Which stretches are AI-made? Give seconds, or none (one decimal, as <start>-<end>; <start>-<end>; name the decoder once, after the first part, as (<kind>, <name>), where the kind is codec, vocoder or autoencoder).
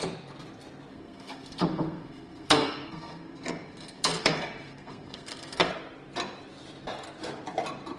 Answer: 0.9-5.7 (codec, SNAC)